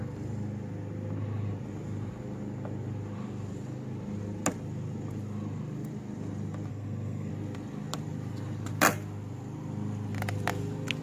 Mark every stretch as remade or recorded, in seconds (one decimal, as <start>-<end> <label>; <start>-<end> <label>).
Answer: 0.0-6.7 recorded; 6.7-7.3 remade; 7.3-11.0 recorded